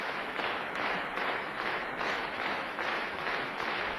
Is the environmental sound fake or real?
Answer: fake